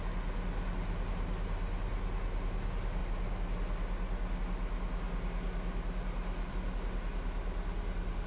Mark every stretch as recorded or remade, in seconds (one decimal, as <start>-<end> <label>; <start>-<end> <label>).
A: 0.0-8.3 recorded